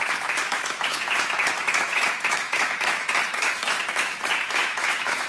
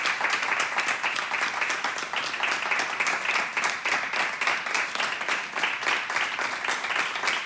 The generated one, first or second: first